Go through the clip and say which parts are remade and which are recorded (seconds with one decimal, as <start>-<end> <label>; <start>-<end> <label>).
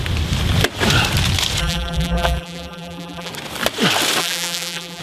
0.0-1.6 recorded; 1.6-3.3 remade; 3.3-4.2 recorded; 4.2-5.0 remade